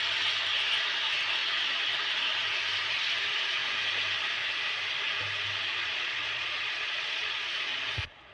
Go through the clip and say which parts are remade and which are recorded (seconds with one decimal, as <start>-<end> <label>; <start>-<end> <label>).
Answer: 0.0-5.8 recorded; 5.8-8.3 remade